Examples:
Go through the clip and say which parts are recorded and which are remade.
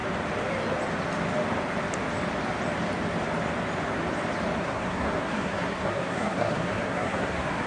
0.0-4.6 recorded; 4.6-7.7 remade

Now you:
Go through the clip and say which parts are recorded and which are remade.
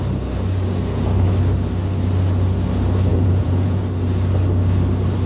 0.0-3.1 recorded; 3.1-3.8 remade; 3.8-5.3 recorded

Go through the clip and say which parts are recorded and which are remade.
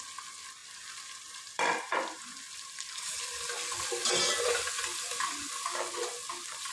0.0-0.6 recorded; 0.6-3.2 remade; 3.2-6.7 recorded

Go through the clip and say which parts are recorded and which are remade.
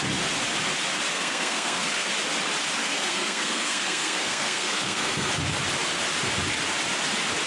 0.0-1.1 recorded; 1.1-2.1 remade; 2.1-2.8 recorded; 2.8-5.3 remade; 5.3-7.5 recorded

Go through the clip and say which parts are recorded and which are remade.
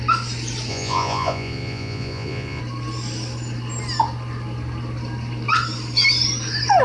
0.0-0.7 recorded; 0.7-2.6 remade; 2.6-6.8 recorded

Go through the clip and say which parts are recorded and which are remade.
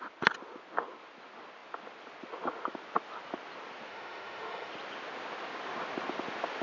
0.0-3.9 recorded; 3.9-4.7 remade; 4.7-6.6 recorded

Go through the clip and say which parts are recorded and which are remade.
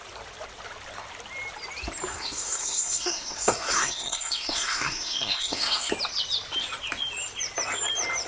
0.0-2.1 recorded; 2.1-5.9 remade; 5.9-8.3 recorded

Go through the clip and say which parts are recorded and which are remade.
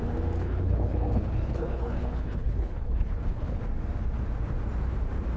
0.0-0.4 recorded; 0.4-3.6 remade; 3.6-5.4 recorded